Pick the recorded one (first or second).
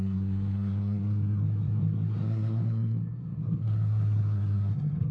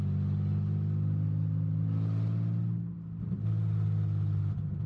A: second